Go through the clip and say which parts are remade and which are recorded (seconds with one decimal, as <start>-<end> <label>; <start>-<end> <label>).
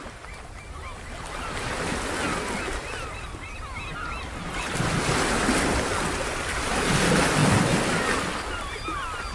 0.0-9.3 recorded